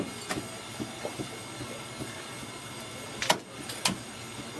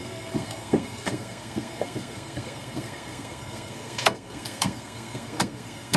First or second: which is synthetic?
second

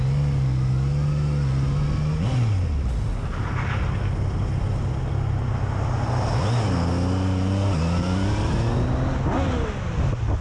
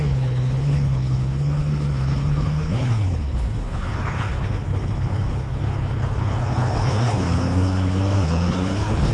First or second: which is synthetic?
second